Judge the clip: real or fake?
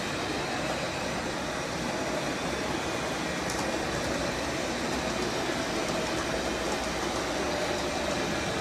real